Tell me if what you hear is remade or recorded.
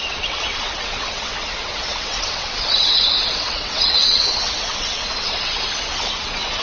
remade